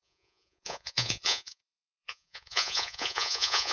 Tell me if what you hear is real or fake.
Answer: fake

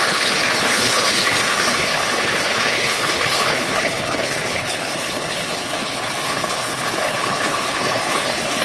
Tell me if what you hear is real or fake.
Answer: fake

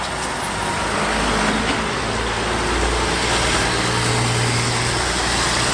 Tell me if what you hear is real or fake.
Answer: real